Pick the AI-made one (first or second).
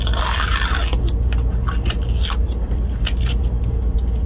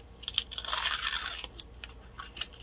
second